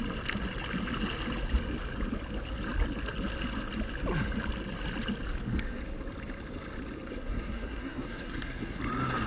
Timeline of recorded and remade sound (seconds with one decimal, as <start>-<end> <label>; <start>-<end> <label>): 0.0-7.1 recorded; 7.1-8.8 remade; 8.8-9.3 recorded